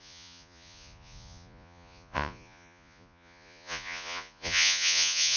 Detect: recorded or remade remade